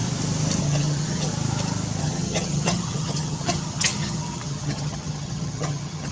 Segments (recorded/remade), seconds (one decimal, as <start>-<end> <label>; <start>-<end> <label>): 0.0-0.6 recorded; 0.6-1.3 remade; 1.3-2.0 recorded; 2.0-6.1 remade